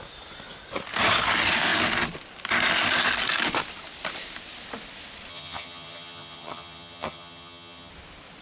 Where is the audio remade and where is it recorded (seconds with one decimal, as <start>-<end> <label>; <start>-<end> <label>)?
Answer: 0.0-5.3 recorded; 5.3-7.9 remade; 7.9-8.4 recorded